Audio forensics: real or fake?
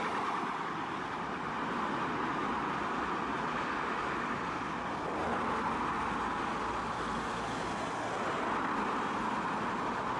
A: real